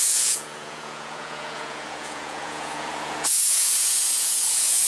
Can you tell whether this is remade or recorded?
remade